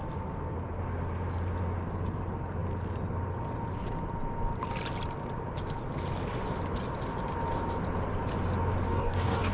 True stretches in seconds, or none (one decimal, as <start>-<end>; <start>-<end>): 0.0-8.9